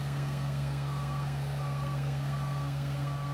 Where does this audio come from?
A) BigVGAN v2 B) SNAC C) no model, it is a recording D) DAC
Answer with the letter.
B